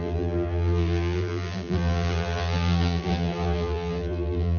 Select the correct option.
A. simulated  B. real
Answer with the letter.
A